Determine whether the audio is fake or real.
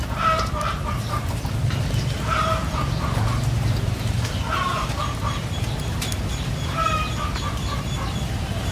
fake